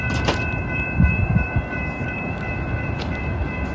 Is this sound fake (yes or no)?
yes